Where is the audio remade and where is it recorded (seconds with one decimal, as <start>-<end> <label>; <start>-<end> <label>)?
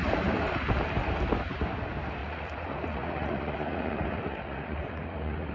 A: 0.0-2.2 recorded; 2.2-5.5 remade